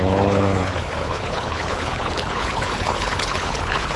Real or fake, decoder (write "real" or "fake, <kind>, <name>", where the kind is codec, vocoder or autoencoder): fake, codec, HILCodec